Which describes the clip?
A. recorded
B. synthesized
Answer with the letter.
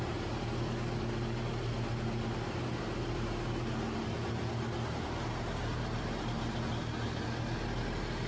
A